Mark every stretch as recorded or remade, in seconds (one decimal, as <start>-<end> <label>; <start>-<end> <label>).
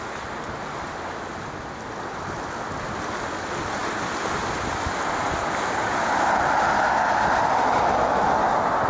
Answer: 0.0-8.9 recorded